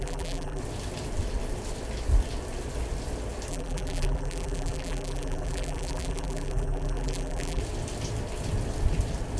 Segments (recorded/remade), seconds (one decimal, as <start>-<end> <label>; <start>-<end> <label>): 0.0-0.6 remade; 0.6-3.5 recorded; 3.5-7.6 remade; 7.6-9.4 recorded